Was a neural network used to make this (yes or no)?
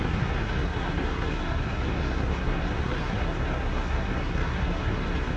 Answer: yes